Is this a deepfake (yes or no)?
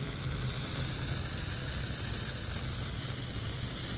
no